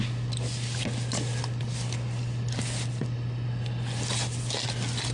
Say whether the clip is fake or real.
real